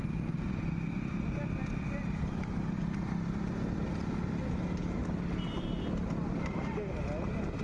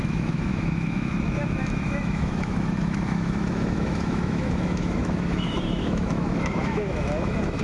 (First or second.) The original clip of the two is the first